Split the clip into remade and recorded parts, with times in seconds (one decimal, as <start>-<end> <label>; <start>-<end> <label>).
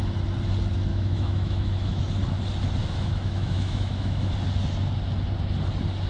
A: 0.0-0.9 recorded; 0.9-2.0 remade; 2.0-2.8 recorded; 2.8-4.3 remade; 4.3-6.1 recorded